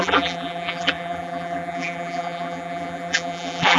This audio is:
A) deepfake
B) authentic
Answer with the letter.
A